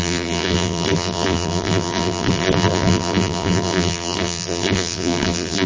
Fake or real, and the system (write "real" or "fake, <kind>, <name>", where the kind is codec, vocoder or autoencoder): fake, vocoder, BigVGAN v2